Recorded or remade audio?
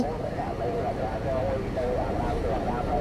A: recorded